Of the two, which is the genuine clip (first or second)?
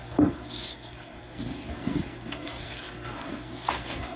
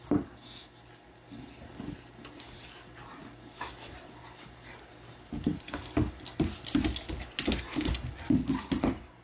second